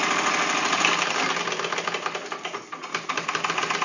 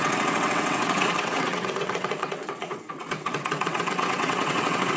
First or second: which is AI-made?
second